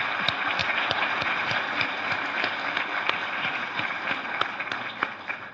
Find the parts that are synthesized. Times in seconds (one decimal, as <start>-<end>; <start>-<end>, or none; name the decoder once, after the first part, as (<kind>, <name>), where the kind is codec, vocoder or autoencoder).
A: 0.6-2.1 (vocoder, Vocos); 3.2-4.0